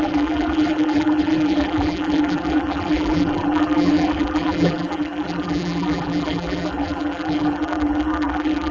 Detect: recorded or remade remade